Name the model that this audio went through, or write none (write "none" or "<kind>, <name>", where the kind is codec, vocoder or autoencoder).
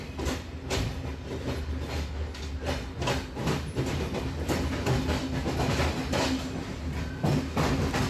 none